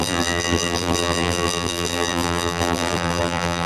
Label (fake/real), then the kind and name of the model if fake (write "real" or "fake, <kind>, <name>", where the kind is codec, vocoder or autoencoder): fake, vocoder, BigVGAN v2